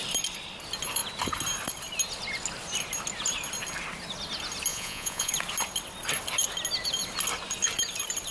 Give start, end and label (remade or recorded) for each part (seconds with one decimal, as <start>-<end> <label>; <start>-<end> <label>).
0.0-4.7 recorded; 4.7-5.3 remade; 5.3-8.3 recorded